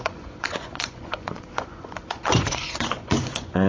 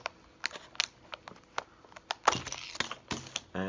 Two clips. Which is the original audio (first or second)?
second